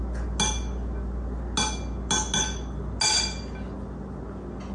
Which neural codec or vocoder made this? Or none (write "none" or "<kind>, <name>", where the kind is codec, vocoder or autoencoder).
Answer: none